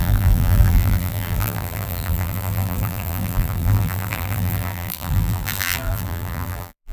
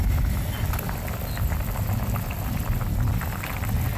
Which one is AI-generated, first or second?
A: first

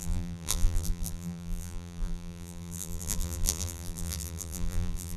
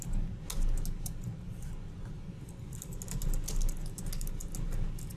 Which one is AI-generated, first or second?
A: first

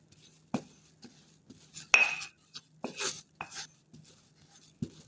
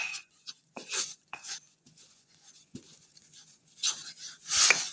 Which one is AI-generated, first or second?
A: second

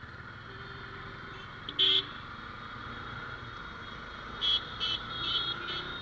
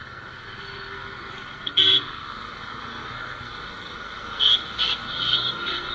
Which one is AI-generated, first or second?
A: second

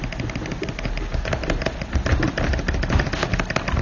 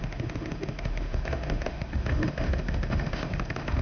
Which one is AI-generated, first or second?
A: second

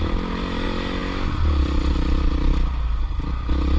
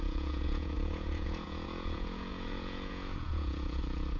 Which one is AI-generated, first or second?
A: second